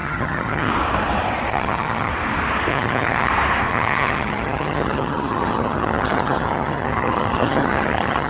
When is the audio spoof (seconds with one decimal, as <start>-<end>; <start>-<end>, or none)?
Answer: 0.0-0.7; 1.5-2.1; 2.7-3.3; 3.7-8.3